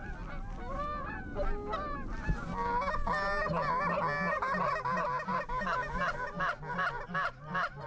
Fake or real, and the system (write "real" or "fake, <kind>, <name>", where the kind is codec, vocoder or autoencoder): real